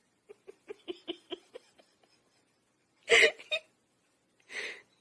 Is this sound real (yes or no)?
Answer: yes